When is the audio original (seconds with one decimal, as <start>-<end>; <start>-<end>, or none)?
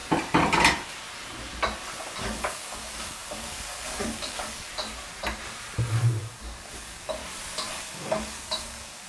0.0-2.2; 4.7-6.2; 7.2-7.7